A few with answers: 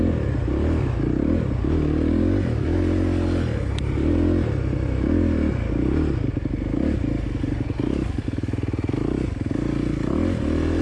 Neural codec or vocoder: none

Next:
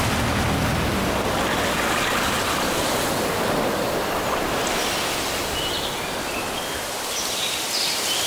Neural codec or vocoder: none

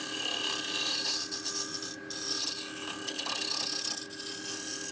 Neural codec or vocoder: none